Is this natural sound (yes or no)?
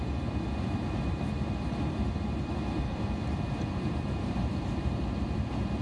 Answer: no